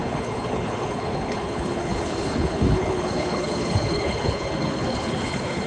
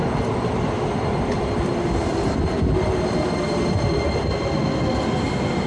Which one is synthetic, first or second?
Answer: first